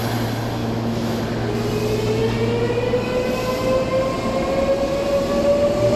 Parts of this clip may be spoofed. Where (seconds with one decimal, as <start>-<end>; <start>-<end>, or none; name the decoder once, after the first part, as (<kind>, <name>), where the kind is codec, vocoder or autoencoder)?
0.6-1.2 (autoencoder, DAC-VAE)